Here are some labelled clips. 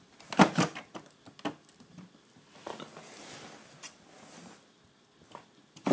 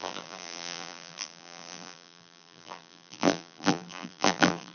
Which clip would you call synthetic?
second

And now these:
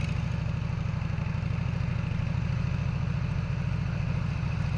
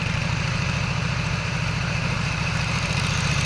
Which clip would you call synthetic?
second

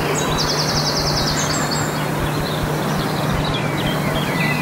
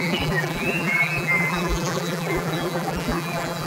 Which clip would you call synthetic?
second